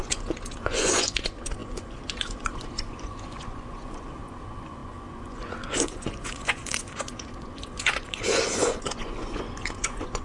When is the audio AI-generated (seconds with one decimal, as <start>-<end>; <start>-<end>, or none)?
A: 0.0-10.2